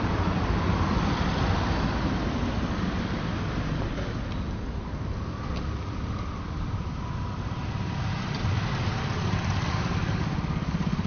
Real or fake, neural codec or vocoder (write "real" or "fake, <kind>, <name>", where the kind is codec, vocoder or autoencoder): real